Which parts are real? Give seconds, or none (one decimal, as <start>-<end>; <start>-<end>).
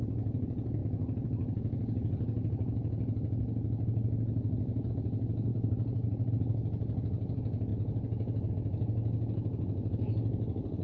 0.0-5.5; 6.3-10.8